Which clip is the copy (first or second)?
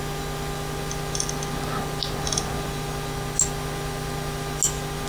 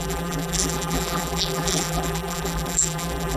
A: second